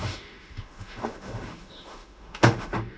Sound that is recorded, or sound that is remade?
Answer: remade